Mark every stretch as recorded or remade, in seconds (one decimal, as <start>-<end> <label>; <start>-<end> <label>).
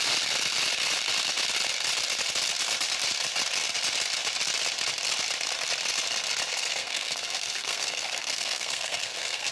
0.0-6.5 recorded; 6.5-9.5 remade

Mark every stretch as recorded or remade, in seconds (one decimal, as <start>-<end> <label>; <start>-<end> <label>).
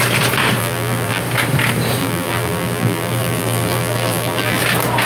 0.0-0.6 recorded; 0.6-1.2 remade; 1.2-2.0 recorded; 2.0-4.6 remade; 4.6-5.1 recorded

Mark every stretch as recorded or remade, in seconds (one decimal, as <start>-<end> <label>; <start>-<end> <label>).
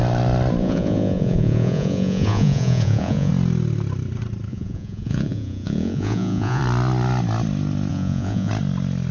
0.0-0.6 recorded; 0.6-3.3 remade; 3.3-4.5 recorded; 4.5-6.6 remade; 6.6-7.9 recorded; 7.9-8.5 remade; 8.5-9.1 recorded